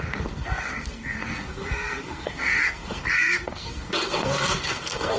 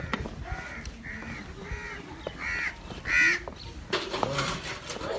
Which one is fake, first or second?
first